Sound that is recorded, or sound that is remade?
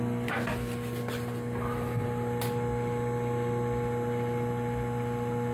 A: recorded